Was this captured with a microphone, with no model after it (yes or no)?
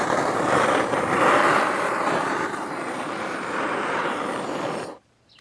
no